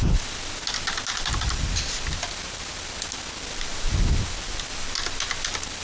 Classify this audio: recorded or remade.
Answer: recorded